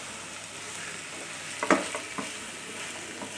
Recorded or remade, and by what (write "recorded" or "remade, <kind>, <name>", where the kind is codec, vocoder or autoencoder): recorded